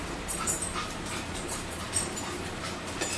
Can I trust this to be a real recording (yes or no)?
no